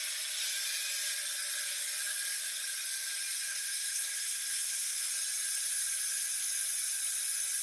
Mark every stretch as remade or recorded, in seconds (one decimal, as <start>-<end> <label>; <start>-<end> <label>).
0.0-3.5 recorded; 3.5-5.1 remade; 5.1-7.6 recorded